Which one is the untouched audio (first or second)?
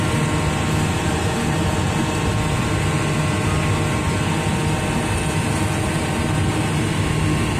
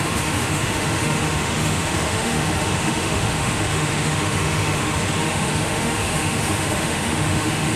first